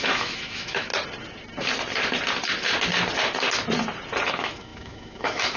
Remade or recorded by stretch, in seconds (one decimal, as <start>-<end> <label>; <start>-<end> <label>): 0.0-0.9 remade; 0.9-4.3 recorded; 4.3-5.6 remade